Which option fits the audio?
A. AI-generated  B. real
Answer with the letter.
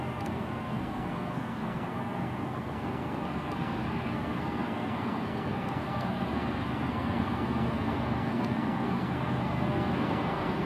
A